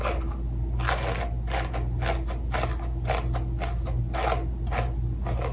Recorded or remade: recorded